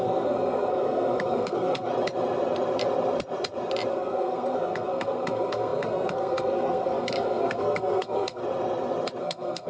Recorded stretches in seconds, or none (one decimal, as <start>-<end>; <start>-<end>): 1.9-3.9; 8.4-9.2